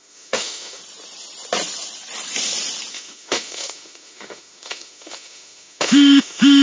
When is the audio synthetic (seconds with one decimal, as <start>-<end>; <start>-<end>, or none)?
0.0-0.8; 2.9-6.6